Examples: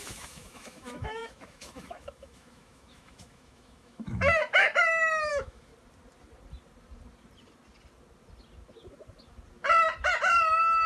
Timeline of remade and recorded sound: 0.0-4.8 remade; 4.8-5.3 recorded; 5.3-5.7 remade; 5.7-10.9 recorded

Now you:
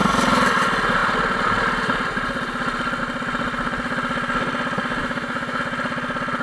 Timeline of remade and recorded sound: 0.0-5.0 recorded; 5.0-5.6 remade; 5.6-6.4 recorded

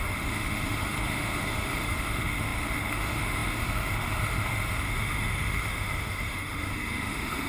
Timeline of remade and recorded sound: 0.0-7.5 remade

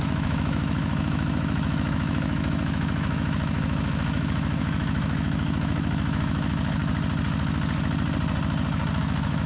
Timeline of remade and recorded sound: 0.0-6.8 remade; 6.8-9.0 recorded; 9.0-9.5 remade

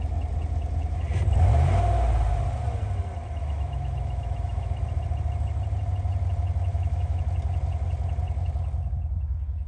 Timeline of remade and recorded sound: 0.0-3.4 recorded; 3.4-4.8 remade; 4.8-6.7 recorded; 6.7-7.2 remade; 7.2-9.7 recorded

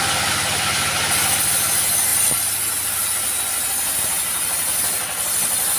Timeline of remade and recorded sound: 0.0-5.8 recorded

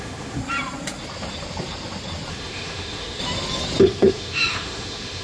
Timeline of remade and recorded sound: 0.0-0.4 remade; 0.4-2.3 recorded; 2.3-3.2 remade; 3.2-3.8 recorded; 3.8-5.2 remade